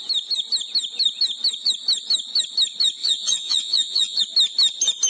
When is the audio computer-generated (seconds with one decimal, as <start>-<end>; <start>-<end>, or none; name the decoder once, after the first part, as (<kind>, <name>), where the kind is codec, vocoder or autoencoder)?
3.0-4.2 (vocoder, Vocos)